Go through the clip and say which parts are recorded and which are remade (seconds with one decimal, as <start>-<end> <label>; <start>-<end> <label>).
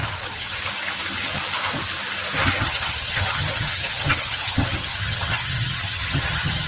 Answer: 0.0-0.6 remade; 0.6-2.4 recorded; 2.4-6.7 remade